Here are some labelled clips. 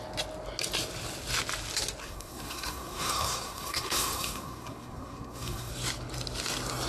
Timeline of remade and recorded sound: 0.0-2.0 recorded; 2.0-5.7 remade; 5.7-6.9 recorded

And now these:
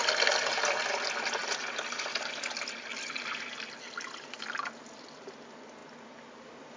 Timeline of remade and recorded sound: 0.0-6.8 recorded

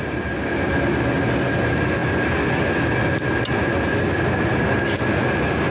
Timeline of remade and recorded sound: 0.0-5.7 recorded

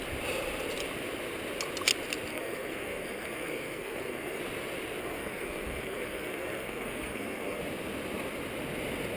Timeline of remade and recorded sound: 0.0-2.3 recorded; 2.3-4.4 remade; 4.4-5.0 recorded; 5.0-7.6 remade; 7.6-9.2 recorded

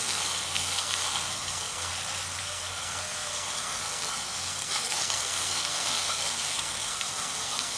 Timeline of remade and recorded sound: 0.0-1.9 remade; 1.9-2.4 recorded; 2.4-7.8 remade